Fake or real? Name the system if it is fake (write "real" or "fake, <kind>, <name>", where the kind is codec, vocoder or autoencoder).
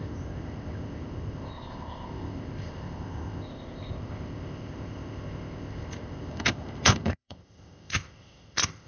fake, codec, ZipCodec